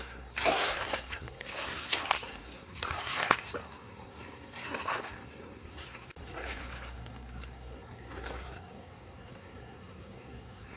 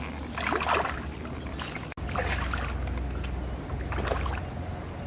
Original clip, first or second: second